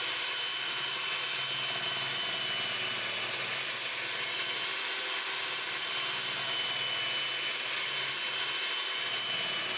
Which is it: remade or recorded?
recorded